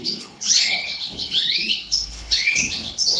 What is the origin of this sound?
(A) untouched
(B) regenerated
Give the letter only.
B